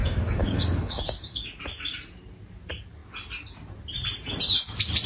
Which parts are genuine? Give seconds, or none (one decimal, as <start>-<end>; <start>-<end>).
1.6-5.1